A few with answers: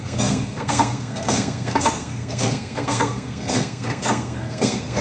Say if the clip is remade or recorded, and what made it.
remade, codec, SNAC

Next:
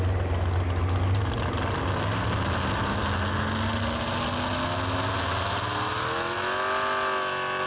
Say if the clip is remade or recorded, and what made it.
recorded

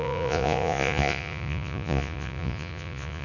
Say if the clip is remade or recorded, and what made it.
remade, vocoder, Vocos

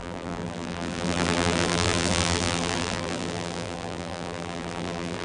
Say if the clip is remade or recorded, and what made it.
remade, vocoder, BigVGAN v2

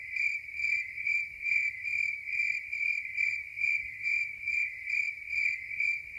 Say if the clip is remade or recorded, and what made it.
remade, vocoder, BigVGAN v2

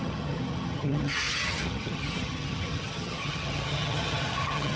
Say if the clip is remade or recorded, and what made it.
remade, vocoder, HiFi-GAN